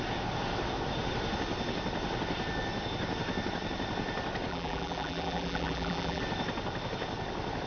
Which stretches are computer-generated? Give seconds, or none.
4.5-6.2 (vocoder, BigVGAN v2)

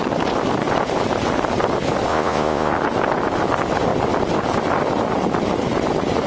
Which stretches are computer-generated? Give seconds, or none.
2.1-2.7 (vocoder, Vocos)

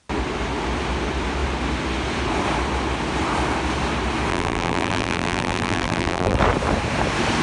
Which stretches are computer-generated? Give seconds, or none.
4.3-6.4 (vocoder, BigVGAN v2)

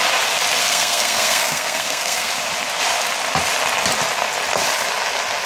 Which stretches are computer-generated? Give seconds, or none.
0.6-2.3 (codec, SNAC)

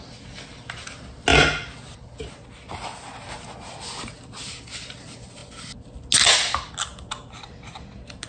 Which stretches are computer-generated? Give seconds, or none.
none

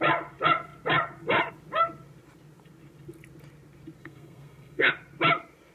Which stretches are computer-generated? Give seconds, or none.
4.0-4.9 (codec, SNAC)

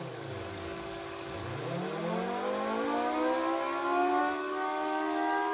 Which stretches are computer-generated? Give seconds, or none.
0.0-1.5 (codec, DAC); 4.2-5.5

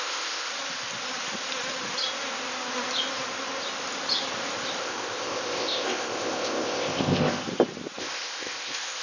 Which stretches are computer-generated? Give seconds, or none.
0.0-0.5 (codec, ZipCodec); 4.8-7.4; 8.0-9.0